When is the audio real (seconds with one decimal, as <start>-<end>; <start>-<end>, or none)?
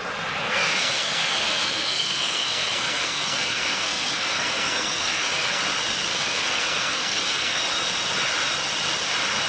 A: 0.0-0.4; 5.6-6.1; 7.6-9.5